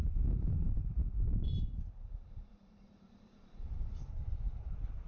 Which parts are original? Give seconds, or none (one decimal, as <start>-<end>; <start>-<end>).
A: none